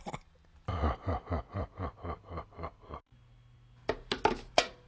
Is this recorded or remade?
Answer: recorded